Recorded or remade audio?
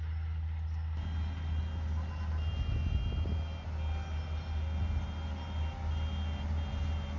recorded